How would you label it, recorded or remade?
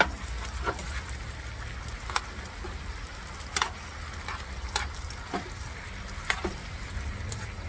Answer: recorded